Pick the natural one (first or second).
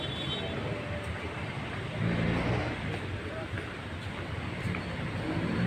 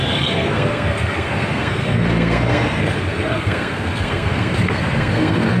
first